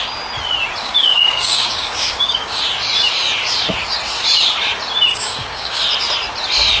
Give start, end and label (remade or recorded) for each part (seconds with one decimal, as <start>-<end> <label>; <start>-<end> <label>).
0.0-0.8 recorded; 0.8-2.6 remade; 2.6-5.1 recorded; 5.1-5.8 remade; 5.8-6.8 recorded